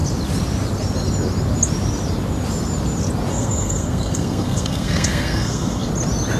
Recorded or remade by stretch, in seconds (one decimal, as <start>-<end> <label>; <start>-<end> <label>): 0.0-3.3 recorded; 3.3-5.9 remade; 5.9-6.4 recorded